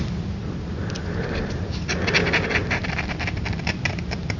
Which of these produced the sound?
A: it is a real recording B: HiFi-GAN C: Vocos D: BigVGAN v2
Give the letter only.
A